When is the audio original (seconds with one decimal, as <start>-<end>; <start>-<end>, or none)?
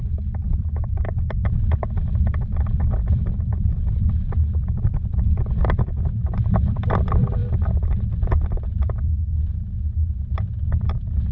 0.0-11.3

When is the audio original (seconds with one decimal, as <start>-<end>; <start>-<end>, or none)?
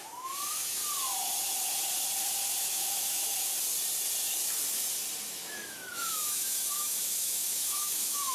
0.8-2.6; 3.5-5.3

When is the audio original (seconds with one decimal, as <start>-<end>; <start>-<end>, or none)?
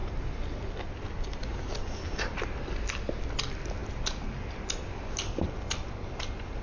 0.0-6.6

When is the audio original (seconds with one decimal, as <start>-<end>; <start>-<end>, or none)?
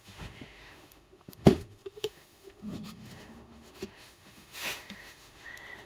none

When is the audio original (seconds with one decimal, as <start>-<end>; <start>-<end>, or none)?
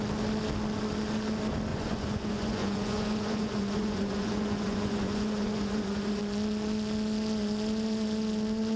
0.0-1.7; 6.2-8.8